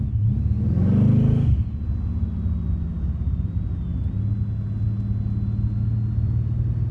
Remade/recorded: recorded